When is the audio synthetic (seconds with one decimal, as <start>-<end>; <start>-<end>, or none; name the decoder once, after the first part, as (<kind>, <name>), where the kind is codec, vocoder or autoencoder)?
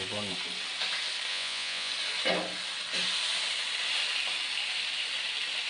1.3-1.9 (vocoder, Vocos)